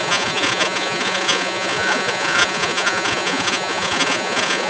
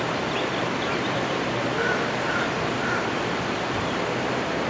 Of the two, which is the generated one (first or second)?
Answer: first